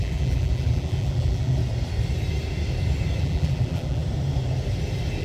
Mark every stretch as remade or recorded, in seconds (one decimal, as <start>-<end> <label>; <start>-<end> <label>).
0.0-1.6 remade; 1.6-3.2 recorded; 3.2-4.0 remade; 4.0-5.2 recorded